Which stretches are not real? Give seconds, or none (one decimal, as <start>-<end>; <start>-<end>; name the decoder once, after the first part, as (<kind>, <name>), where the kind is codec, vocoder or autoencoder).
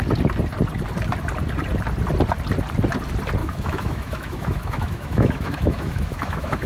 3.4-6.7 (autoencoder, DAC-VAE)